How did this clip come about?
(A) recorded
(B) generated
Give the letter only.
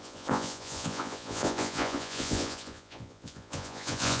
B